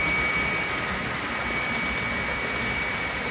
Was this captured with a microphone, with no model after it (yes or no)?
yes